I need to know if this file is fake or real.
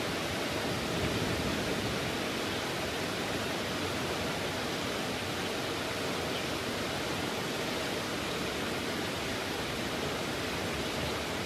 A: real